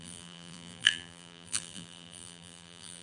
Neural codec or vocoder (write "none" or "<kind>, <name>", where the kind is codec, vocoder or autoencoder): vocoder, BigVGAN v2